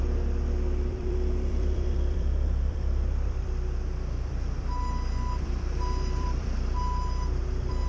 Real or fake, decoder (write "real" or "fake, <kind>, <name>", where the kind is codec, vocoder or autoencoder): fake, vocoder, BigVGAN v2